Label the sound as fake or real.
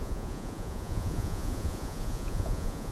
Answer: fake